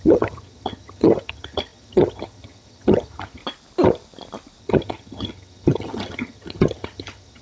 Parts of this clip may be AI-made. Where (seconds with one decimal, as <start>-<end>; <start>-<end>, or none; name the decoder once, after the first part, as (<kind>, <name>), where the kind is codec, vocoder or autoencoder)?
0.0-3.4 (vocoder, HiFi-GAN); 4.6-7.4